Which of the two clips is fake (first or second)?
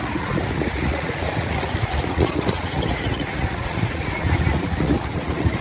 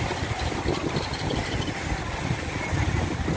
first